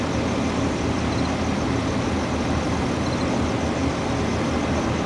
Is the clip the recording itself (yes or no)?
yes